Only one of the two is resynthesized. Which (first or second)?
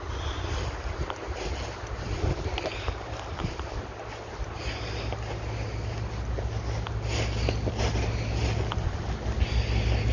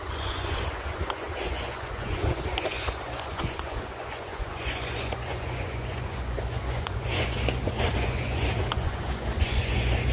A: second